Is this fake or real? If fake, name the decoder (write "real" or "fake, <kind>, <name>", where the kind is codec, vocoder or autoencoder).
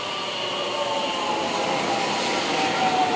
real